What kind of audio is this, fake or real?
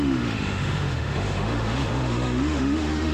fake